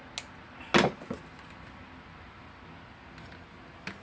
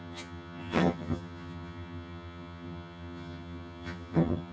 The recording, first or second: first